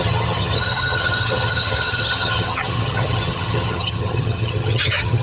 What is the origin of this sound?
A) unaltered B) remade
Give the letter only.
B